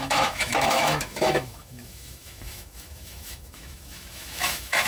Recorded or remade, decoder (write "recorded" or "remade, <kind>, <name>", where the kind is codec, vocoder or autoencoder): remade, autoencoder, DAC-VAE